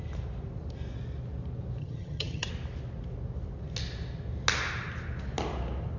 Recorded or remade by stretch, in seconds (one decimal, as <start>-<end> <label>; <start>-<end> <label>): 0.0-1.8 recorded; 1.8-2.5 remade; 2.5-6.0 recorded